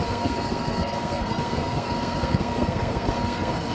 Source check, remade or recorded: remade